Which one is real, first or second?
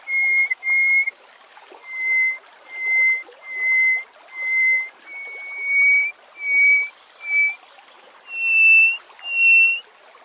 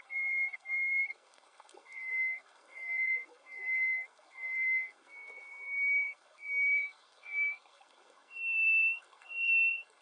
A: first